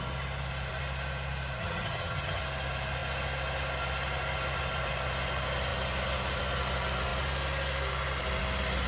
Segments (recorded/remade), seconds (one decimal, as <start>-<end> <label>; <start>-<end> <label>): 0.0-1.6 recorded; 1.6-2.4 remade; 2.4-8.9 recorded